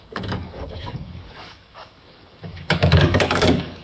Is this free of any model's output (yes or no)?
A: no